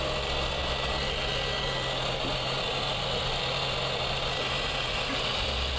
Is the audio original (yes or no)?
yes